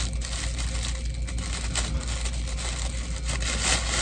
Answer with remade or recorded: recorded